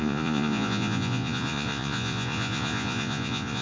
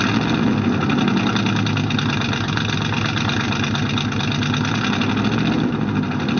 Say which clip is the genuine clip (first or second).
second